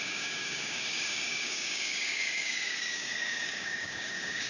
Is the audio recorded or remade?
remade